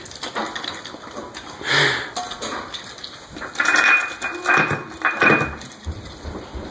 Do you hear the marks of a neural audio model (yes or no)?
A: no